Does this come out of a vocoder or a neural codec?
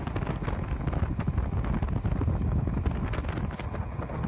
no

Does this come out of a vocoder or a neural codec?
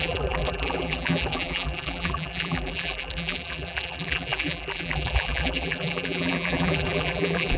yes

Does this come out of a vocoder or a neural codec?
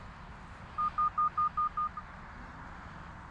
no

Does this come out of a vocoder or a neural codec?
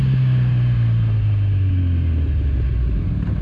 no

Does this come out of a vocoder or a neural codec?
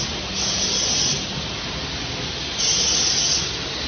no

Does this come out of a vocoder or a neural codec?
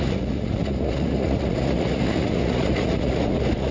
yes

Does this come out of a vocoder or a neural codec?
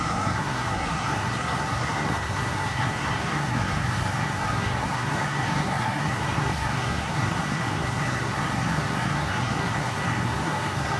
yes